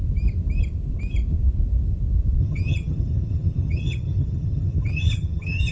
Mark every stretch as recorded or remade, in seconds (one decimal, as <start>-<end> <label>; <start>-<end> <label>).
0.0-2.4 recorded; 2.4-5.7 remade